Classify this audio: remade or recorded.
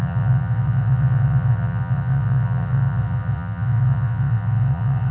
remade